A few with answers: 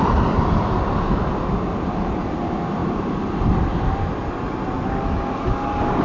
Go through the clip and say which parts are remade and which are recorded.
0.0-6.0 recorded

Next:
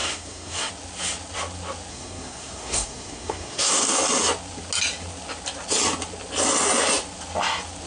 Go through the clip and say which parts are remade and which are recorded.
0.0-0.7 remade; 0.7-1.9 recorded; 1.9-3.8 remade; 3.8-7.9 recorded

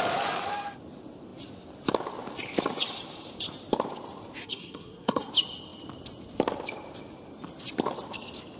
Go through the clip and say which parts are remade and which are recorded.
0.0-4.4 recorded; 4.4-5.3 remade; 5.3-8.6 recorded

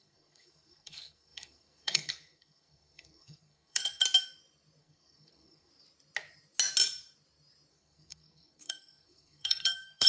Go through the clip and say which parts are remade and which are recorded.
0.0-4.0 remade; 4.0-4.8 recorded; 4.8-5.7 remade; 5.7-7.7 recorded; 7.7-10.1 remade

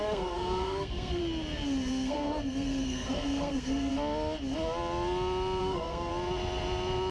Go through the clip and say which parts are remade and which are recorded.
0.0-1.2 remade; 1.2-1.9 recorded; 1.9-3.9 remade; 3.9-5.6 recorded; 5.6-6.1 remade; 6.1-7.1 recorded

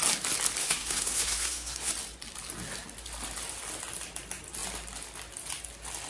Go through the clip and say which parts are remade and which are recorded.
0.0-0.6 recorded; 0.6-1.9 remade; 1.9-6.1 recorded

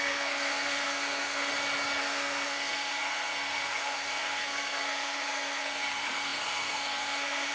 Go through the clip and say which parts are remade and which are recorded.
0.0-1.5 remade; 1.5-2.0 recorded; 2.0-7.5 remade

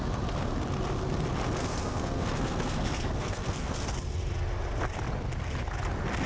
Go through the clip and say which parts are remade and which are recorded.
0.0-1.6 recorded; 1.6-3.7 remade; 3.7-6.3 recorded